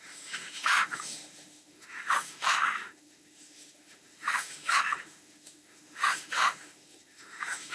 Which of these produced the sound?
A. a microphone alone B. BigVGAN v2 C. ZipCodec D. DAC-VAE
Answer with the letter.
D